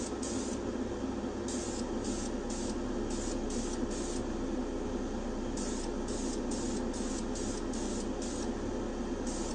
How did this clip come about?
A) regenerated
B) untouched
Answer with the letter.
B